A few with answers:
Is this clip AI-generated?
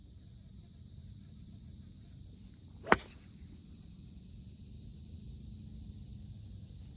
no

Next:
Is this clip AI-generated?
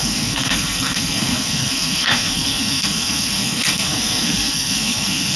yes